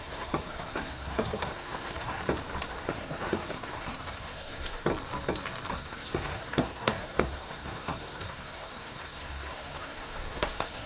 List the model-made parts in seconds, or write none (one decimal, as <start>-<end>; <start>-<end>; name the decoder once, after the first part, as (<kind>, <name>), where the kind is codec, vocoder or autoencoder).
0.0-2.2 (codec, SNAC); 2.7-4.9; 5.7-10.9